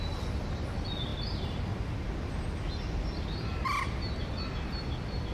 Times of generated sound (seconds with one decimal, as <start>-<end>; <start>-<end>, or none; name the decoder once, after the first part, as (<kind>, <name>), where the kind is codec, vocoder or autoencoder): none